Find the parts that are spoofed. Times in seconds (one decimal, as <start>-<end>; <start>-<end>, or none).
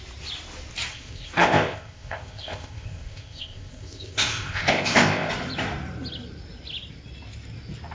0.9-5.3